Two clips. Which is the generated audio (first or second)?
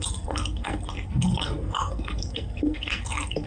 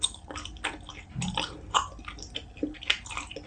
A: first